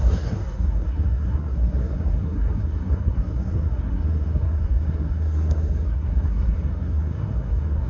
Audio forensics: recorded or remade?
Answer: remade